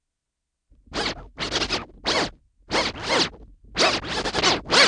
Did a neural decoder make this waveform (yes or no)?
no